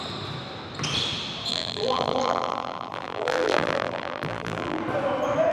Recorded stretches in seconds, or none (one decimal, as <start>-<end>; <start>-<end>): 0.0-1.5; 4.8-5.5